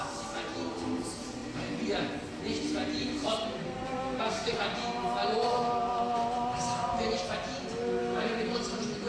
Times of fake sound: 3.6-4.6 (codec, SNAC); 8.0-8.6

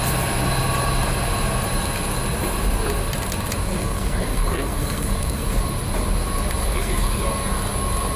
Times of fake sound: 3.7-5.6 (codec, SNAC); 6.6-7.2

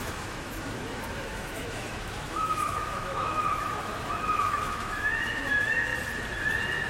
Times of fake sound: 0.0-5.9 (autoencoder, DAC-VAE)